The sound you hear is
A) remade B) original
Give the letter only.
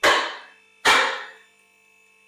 B